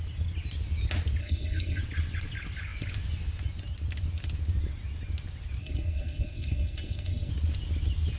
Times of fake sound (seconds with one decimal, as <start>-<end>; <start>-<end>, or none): 1.2-1.8; 5.6-7.3